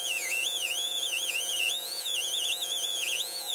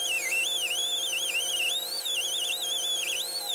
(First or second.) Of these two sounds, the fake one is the first